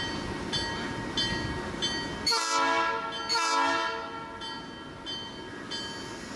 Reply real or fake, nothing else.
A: real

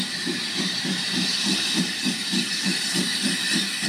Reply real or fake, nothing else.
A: fake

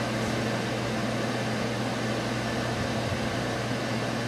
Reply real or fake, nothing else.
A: real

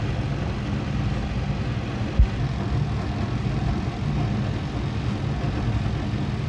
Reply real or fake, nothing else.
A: real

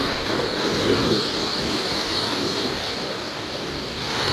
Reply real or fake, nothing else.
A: fake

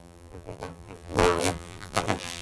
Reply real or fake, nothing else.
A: fake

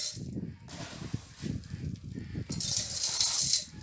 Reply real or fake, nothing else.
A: real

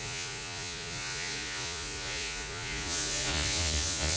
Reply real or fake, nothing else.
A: fake